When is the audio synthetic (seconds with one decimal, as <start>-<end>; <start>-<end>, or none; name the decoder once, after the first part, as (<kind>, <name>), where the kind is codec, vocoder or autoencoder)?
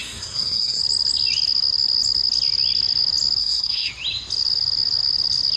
0.0-0.8 (codec, SNAC); 3.4-3.9